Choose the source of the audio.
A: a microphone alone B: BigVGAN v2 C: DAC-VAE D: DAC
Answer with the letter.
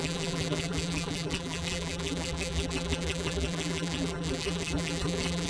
B